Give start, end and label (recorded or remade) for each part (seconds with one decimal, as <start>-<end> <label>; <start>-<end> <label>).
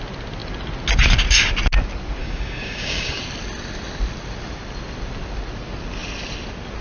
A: 0.0-2.2 recorded; 2.2-3.2 remade; 3.2-6.8 recorded